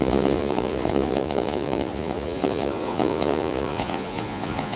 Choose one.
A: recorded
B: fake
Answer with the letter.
B